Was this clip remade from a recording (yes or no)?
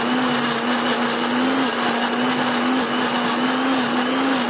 no